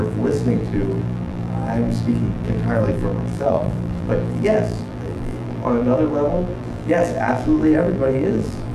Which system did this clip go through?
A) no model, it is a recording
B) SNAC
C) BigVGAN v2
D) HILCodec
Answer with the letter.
C